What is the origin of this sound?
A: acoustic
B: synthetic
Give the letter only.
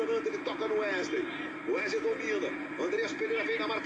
A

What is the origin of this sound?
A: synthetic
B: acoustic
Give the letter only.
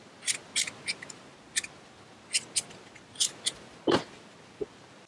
B